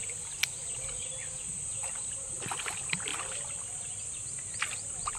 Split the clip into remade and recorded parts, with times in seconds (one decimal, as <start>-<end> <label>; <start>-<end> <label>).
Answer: 0.0-5.2 recorded